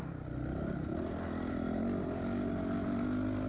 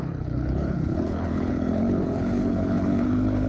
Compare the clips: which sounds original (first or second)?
first